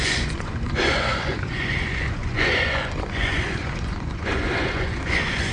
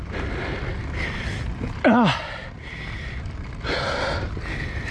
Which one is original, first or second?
second